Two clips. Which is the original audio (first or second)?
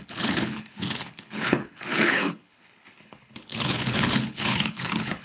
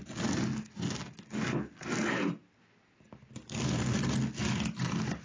second